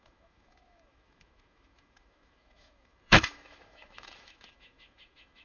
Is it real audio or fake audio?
fake